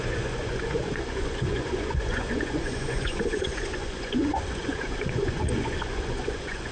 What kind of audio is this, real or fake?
fake